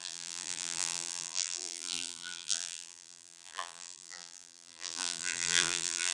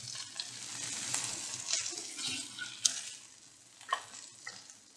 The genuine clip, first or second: second